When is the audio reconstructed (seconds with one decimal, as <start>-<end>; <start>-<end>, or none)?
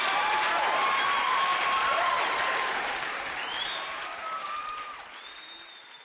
0.0-6.0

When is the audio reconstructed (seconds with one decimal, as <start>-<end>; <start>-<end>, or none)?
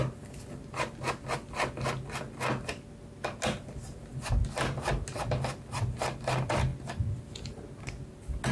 none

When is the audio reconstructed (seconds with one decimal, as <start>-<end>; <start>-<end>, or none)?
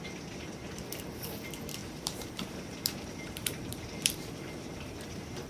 1.8-5.1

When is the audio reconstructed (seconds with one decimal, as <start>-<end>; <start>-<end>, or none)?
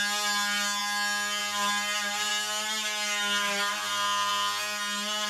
none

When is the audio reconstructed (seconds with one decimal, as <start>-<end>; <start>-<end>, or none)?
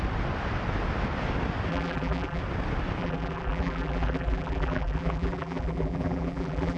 1.7-2.4; 3.0-6.8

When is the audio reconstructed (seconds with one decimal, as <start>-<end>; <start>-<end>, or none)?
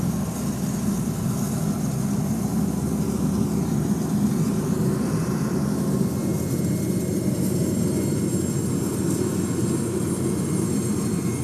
none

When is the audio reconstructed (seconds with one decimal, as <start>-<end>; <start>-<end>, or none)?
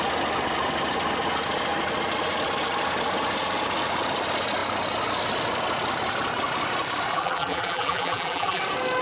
7.1-8.6